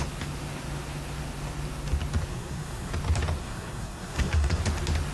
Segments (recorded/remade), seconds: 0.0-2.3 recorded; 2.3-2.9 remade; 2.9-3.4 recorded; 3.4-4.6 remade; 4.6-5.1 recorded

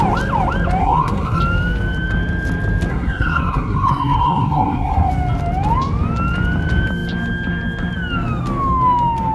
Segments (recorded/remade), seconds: 0.0-0.8 recorded; 0.8-1.4 remade; 1.4-2.9 recorded; 2.9-5.1 remade; 5.1-9.3 recorded

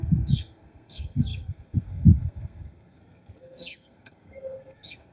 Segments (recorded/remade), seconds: 0.0-5.1 remade

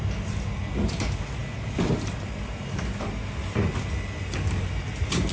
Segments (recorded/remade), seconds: 0.0-5.3 recorded

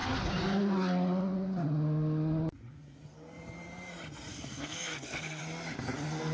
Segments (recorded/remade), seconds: 0.0-4.3 recorded; 4.3-5.4 remade; 5.4-6.3 recorded